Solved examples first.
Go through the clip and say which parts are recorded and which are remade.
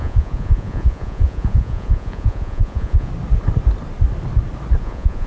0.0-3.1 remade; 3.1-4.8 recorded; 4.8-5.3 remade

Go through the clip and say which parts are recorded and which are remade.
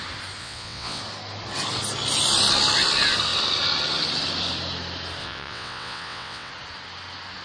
0.0-0.4 recorded; 0.4-1.0 remade; 1.0-5.2 recorded; 5.2-6.5 remade; 6.5-7.4 recorded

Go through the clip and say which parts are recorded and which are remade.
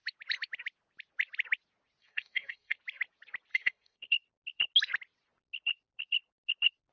0.0-2.0 recorded; 2.0-2.8 remade; 2.8-3.5 recorded; 3.5-4.1 remade; 4.1-6.9 recorded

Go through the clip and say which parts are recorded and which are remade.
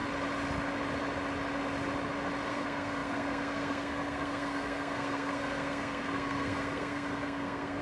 0.0-2.5 recorded; 2.5-7.8 remade